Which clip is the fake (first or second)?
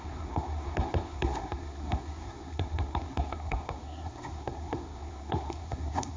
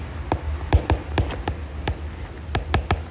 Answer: first